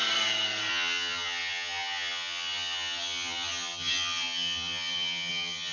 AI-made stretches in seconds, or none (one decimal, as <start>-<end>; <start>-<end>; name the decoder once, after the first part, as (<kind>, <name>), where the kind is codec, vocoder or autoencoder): 0.7-5.7 (vocoder, HiFi-GAN)